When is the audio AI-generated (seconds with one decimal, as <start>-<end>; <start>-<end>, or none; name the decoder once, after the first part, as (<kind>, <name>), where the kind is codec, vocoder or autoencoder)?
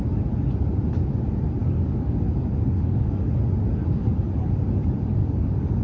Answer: 1.6-3.3 (codec, DAC); 3.8-4.5; 5.2-5.8